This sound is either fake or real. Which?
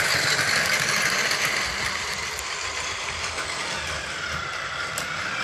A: fake